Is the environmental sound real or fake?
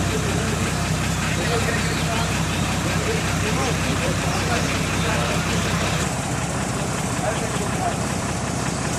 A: fake